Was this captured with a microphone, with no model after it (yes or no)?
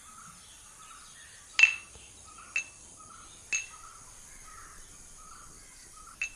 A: yes